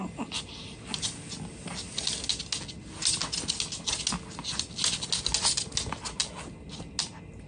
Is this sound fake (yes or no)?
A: no